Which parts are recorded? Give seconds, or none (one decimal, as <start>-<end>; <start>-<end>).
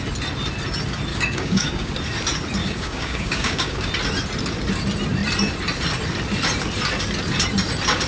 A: 0.0-1.1; 1.9-2.6; 3.9-8.1